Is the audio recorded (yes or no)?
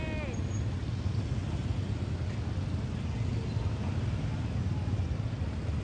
yes